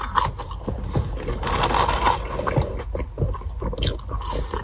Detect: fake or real real